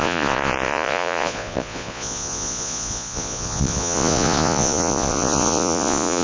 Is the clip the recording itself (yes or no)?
no